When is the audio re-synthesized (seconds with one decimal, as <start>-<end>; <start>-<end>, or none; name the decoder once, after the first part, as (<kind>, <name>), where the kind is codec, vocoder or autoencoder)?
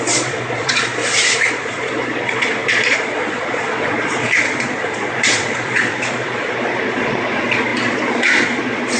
0.0-1.0 (vocoder, Vocos); 1.5-9.0